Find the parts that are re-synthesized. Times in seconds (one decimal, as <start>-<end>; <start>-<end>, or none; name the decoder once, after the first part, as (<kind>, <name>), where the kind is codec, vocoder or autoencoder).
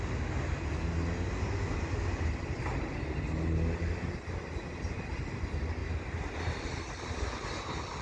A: none